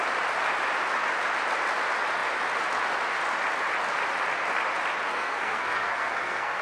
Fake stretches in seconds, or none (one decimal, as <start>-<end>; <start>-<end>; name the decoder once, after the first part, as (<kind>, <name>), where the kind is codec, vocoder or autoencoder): 5.1-6.6 (codec, SNAC)